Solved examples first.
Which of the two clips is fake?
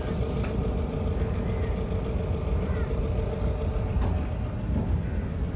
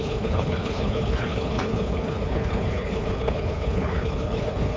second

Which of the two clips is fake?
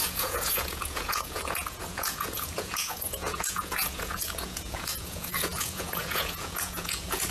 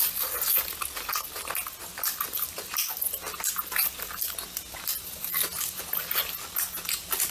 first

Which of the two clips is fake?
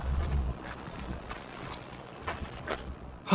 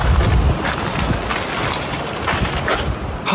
first